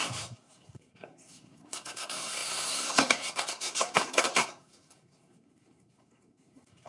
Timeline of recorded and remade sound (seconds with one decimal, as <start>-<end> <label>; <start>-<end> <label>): 0.0-6.9 remade